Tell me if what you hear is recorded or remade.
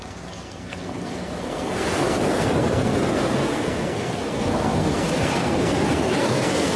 remade